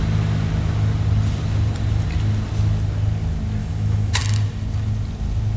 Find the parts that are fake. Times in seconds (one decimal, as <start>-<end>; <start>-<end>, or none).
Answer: 3.6-4.2